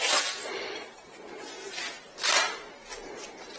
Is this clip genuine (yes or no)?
yes